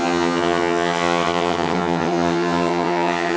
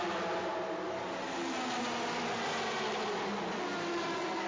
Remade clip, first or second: first